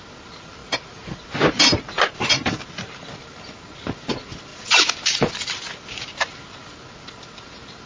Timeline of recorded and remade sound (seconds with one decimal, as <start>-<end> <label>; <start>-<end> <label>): 0.0-0.6 recorded; 0.6-1.2 remade; 1.2-7.9 recorded